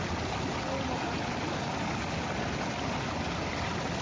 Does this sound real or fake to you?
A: real